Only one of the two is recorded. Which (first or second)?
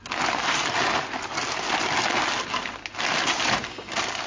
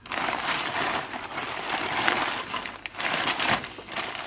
first